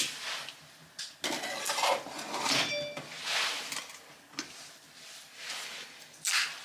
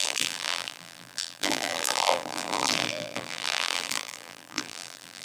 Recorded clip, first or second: first